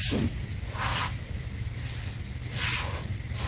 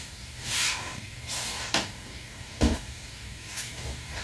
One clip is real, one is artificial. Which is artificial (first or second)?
second